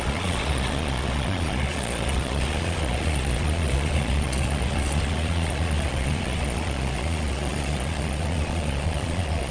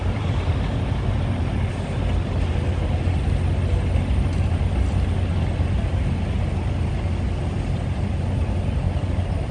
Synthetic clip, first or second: first